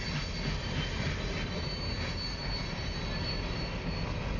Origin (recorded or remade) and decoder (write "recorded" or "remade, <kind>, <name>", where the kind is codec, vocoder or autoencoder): recorded